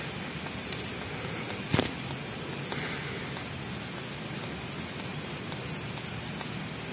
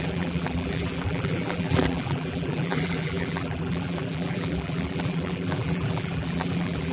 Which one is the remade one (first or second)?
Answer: second